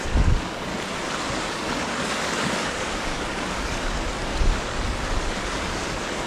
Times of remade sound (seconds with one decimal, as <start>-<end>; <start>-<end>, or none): 0.0-0.7; 1.3-6.3